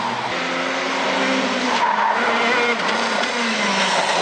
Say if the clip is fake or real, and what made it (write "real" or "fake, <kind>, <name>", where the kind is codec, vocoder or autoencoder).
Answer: real